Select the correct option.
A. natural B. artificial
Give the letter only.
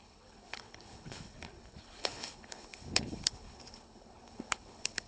B